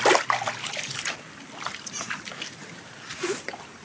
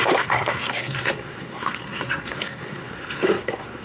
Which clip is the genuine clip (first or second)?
first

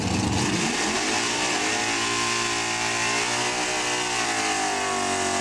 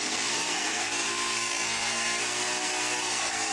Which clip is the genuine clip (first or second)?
first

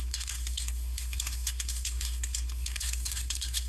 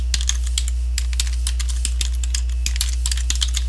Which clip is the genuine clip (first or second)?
second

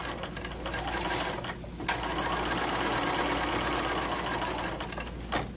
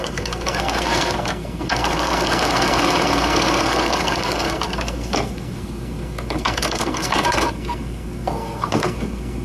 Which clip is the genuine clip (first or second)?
first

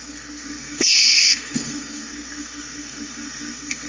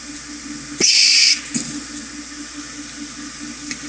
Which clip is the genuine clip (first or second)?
second